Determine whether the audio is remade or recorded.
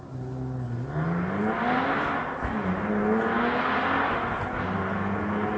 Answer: recorded